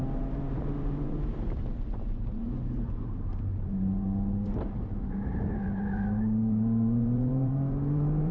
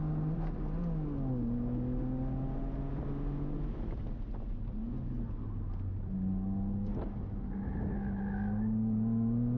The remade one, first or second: first